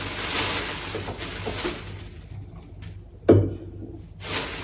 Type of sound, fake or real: real